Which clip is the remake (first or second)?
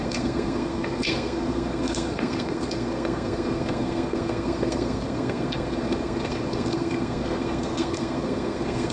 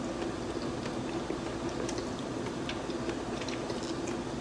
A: first